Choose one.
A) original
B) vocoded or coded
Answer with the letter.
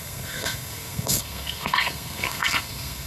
B